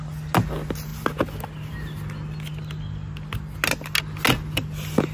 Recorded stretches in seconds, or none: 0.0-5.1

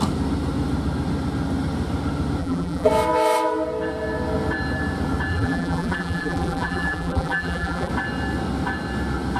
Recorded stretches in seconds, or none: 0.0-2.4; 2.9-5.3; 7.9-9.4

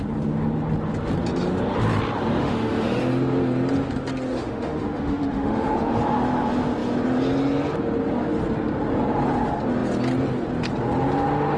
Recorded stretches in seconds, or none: 0.0-2.4; 3.0-4.3; 6.0-11.6